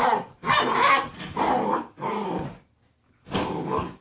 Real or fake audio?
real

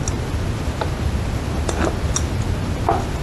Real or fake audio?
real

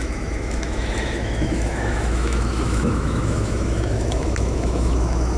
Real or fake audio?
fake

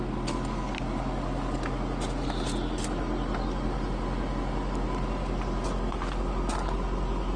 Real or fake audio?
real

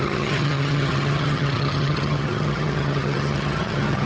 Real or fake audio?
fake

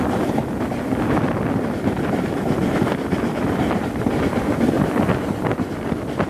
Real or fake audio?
real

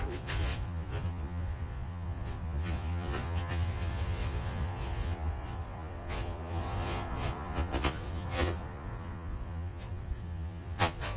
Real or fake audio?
fake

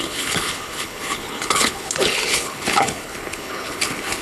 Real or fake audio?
fake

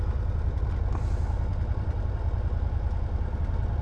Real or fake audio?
fake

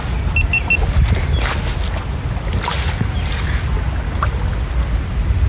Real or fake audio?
real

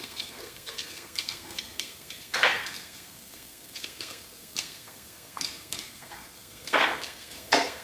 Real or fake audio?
fake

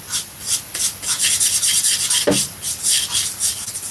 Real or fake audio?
real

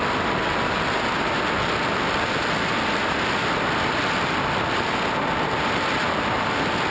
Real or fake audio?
real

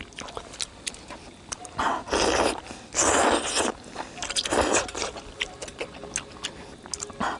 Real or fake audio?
real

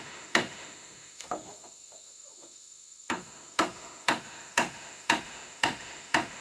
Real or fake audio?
fake